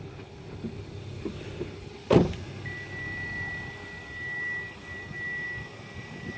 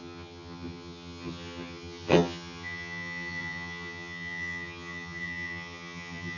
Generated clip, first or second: second